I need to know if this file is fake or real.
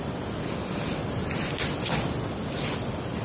real